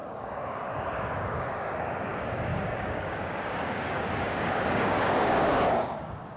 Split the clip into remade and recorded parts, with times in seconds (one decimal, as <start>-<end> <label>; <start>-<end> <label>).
0.0-6.4 remade